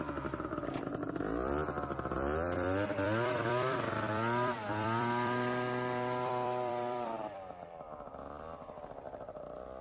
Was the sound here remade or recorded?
remade